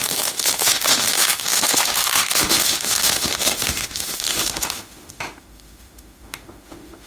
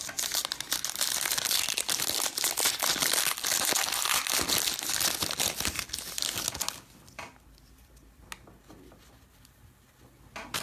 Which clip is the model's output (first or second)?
first